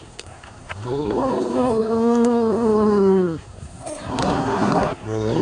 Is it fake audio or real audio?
fake